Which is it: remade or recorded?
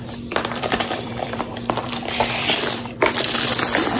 remade